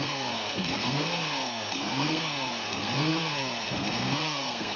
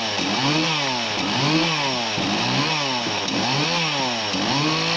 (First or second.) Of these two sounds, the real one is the second